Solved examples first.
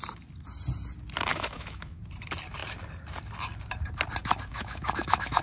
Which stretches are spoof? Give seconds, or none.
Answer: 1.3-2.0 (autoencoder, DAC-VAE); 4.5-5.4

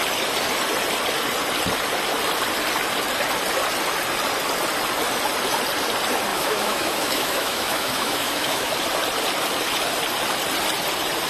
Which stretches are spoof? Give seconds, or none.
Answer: 6.3-8.7 (autoencoder, DAC-VAE)

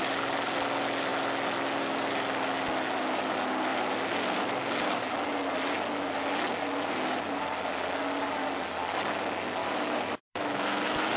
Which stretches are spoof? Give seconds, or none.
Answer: 9.6-11.2 (autoencoder, DAC-VAE)

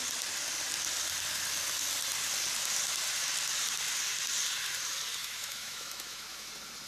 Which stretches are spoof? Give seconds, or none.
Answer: 5.2-6.5 (autoencoder, DAC-VAE)